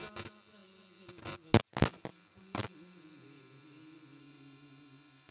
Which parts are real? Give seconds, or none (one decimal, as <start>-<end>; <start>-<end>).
0.0-2.1